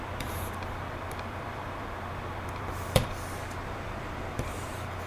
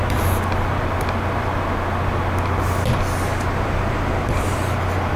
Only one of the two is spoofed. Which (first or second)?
first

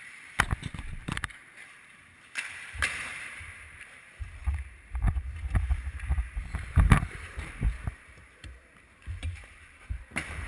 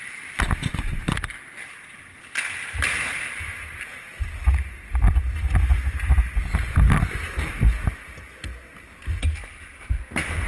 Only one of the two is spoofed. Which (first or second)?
first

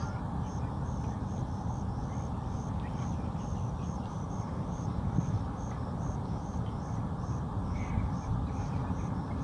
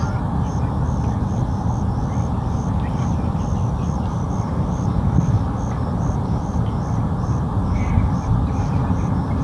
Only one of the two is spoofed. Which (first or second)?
first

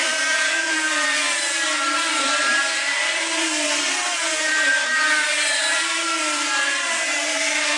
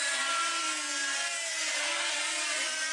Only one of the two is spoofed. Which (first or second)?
first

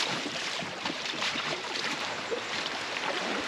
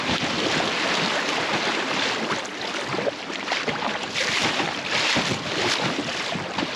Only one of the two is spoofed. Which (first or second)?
first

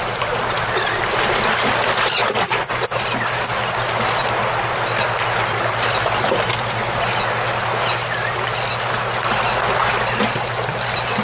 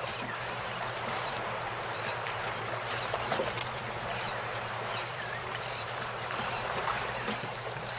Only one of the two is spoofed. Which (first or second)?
second